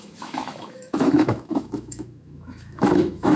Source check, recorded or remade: remade